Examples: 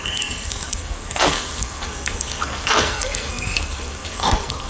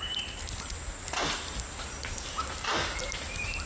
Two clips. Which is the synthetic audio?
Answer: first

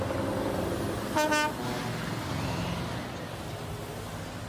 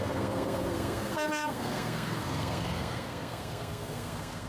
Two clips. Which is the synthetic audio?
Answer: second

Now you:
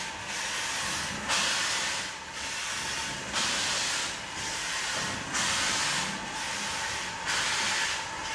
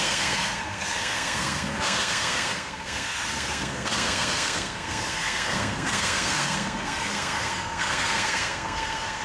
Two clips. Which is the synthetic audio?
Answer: second